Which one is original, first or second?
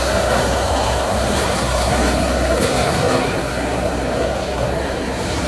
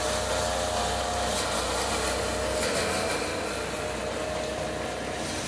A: second